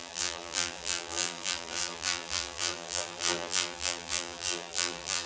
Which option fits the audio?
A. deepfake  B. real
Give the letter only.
A